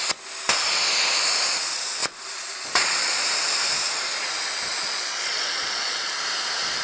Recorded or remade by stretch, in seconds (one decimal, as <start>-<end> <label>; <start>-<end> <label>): 0.0-2.0 recorded; 2.0-3.2 remade; 3.2-4.7 recorded; 4.7-6.1 remade; 6.1-6.8 recorded